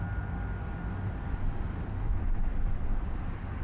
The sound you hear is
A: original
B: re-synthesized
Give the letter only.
A